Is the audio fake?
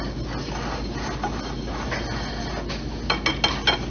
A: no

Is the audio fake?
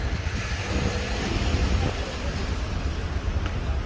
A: no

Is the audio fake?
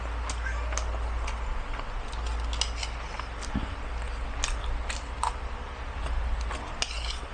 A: no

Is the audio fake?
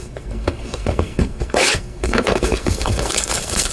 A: yes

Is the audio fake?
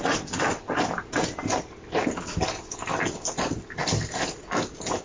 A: no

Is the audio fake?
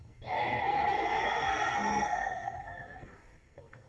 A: yes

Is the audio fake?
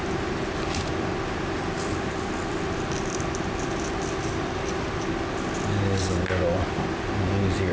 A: no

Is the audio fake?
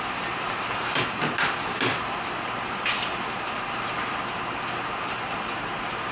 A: yes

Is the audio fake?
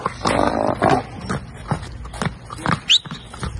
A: no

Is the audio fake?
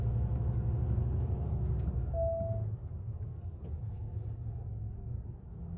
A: no